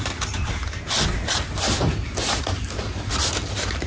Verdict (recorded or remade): recorded